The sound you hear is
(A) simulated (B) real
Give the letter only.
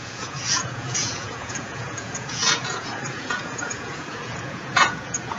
A